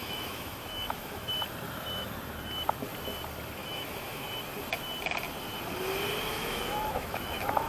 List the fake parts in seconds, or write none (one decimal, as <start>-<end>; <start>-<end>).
0.0-1.3; 3.6-4.2; 6.3-7.7